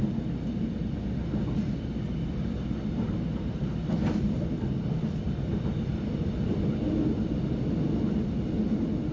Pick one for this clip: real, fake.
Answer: real